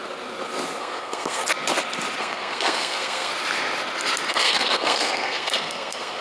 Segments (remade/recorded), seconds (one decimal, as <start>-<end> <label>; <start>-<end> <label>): 0.0-0.8 recorded; 0.8-1.4 remade; 1.4-2.2 recorded; 2.2-3.3 remade; 3.3-4.3 recorded; 4.3-6.2 remade